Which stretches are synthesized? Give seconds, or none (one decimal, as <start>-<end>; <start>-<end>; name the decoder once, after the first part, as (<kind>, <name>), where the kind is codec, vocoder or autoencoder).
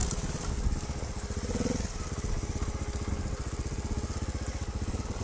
none